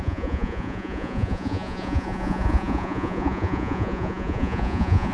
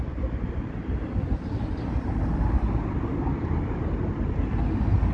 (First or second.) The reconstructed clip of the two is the first